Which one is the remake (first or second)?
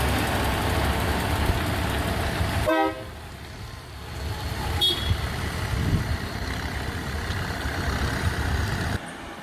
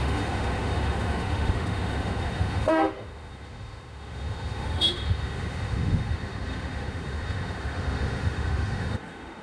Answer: second